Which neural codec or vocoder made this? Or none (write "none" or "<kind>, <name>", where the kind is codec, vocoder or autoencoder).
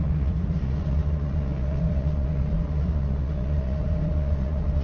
vocoder, Vocos